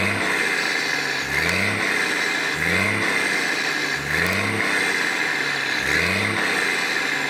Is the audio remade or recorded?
recorded